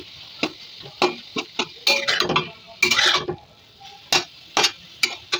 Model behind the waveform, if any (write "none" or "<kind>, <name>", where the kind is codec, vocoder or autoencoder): none